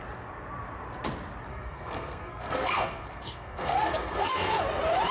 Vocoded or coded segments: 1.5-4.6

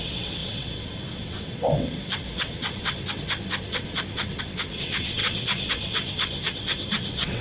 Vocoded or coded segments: 0.0-7.4

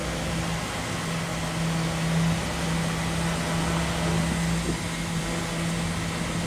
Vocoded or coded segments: none